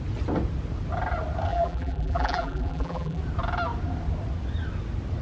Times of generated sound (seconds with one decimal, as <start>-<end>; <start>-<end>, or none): 1.5-3.2

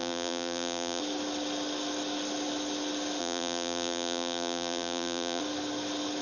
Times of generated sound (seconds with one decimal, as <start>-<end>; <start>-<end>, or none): 0.0-1.0; 3.2-5.4

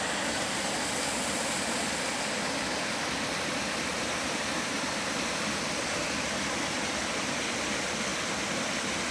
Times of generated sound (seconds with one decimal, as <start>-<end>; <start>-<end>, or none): none

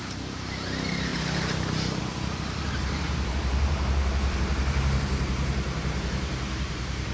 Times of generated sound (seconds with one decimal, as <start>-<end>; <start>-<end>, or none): 0.0-7.1